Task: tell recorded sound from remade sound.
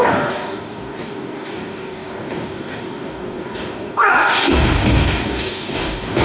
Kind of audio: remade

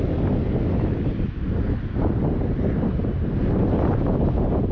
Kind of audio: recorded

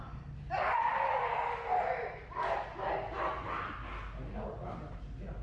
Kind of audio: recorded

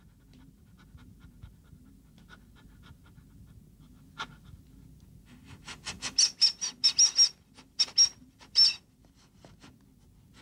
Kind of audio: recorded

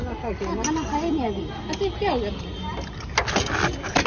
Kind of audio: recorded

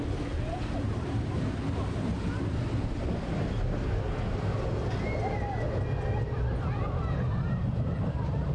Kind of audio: recorded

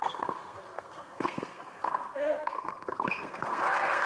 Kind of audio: remade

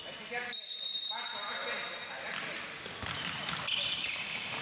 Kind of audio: recorded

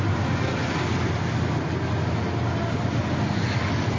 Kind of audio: recorded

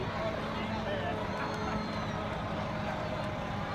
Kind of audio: recorded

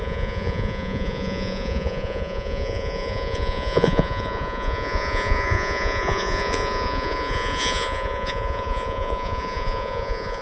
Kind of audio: remade